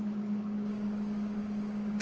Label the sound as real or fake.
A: fake